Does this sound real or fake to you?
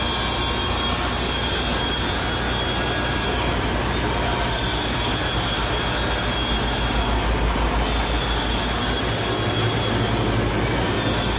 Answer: real